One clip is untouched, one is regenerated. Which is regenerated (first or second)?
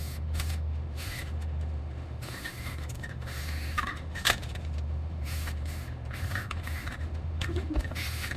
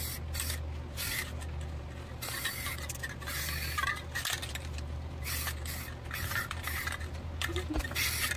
first